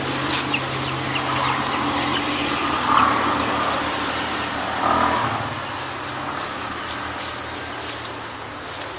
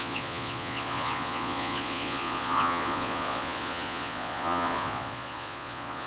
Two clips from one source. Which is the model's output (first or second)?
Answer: second